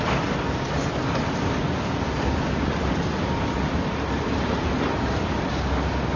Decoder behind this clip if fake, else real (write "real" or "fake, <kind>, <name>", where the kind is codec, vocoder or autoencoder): real